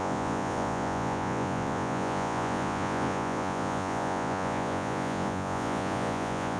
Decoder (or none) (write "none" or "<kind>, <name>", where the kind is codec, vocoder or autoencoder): vocoder, Vocos